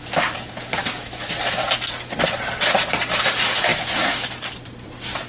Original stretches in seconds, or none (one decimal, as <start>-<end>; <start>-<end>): 0.0-0.7; 1.3-3.7; 4.3-5.3